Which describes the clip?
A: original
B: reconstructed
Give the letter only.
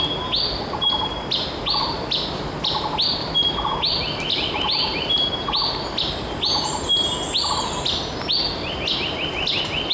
A